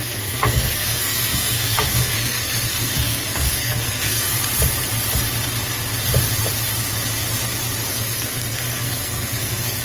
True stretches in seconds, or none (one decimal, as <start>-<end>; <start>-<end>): 4.3-7.9